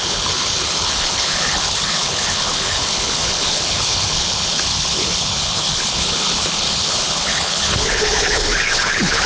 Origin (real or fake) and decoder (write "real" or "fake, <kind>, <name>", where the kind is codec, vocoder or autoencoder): fake, codec, HILCodec